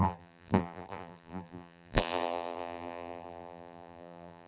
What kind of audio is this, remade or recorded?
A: remade